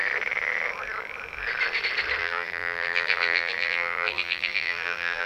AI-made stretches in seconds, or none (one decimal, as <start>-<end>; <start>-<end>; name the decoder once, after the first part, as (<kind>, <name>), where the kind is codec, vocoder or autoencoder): 2.2-5.3 (vocoder, BigVGAN v2)